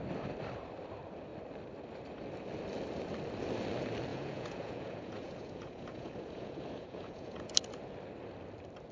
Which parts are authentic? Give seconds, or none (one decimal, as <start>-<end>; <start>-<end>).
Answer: 0.0-4.1; 7.5-8.9